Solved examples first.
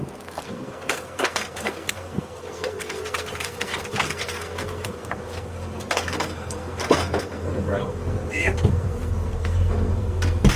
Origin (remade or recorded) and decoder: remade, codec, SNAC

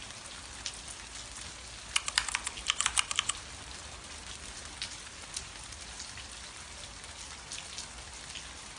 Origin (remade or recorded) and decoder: recorded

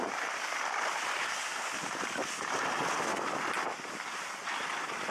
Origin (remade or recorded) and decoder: recorded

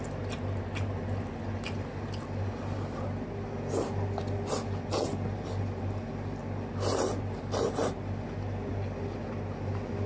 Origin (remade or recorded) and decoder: recorded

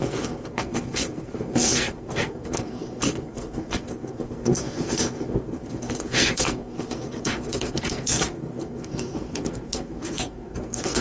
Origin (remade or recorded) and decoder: remade, codec, SNAC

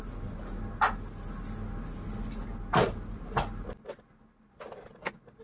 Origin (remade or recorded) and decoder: recorded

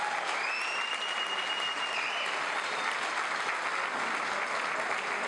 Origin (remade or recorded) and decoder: recorded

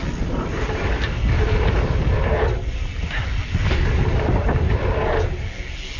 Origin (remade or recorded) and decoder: recorded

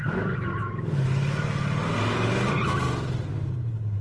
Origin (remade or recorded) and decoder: recorded